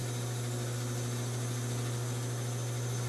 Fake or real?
real